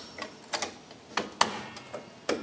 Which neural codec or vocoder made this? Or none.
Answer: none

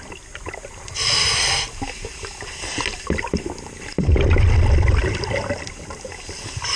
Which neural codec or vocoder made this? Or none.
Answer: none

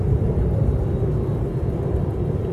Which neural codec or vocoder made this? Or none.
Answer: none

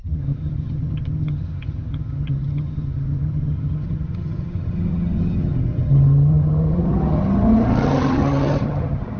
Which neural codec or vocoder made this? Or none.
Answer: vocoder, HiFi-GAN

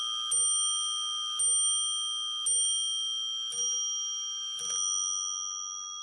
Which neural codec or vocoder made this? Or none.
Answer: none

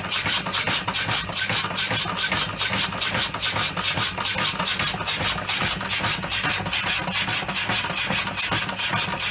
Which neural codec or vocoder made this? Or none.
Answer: none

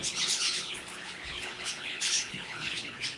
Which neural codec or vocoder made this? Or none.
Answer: codec, HILCodec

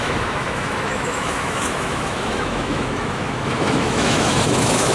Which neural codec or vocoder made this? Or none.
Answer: autoencoder, DAC-VAE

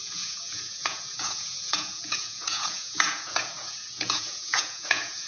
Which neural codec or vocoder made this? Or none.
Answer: vocoder, Vocos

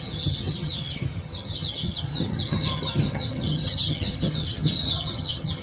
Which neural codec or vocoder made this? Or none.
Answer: vocoder, HiFi-GAN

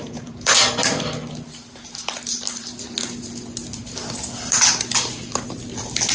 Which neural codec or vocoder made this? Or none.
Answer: none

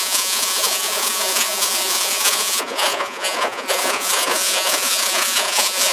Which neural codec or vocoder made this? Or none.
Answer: vocoder, Vocos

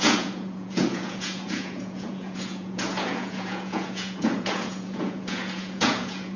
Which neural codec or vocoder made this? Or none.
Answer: vocoder, Vocos